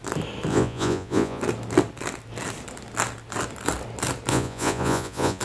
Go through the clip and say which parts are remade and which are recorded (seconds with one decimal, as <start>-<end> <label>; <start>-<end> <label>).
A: 0.0-0.5 recorded; 0.5-1.4 remade; 1.4-4.3 recorded; 4.3-5.4 remade